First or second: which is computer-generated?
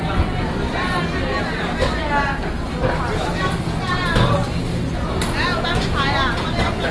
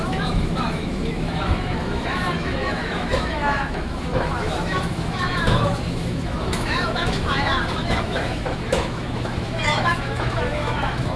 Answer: second